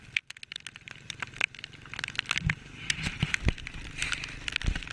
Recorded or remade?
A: recorded